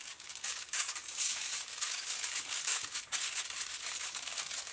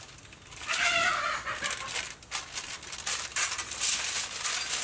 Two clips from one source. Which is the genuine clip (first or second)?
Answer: second